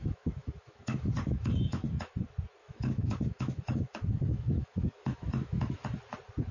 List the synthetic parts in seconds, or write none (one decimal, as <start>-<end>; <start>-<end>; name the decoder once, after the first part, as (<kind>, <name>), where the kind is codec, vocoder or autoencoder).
0.0-2.2 (autoencoder, DAC-VAE); 2.6-5.8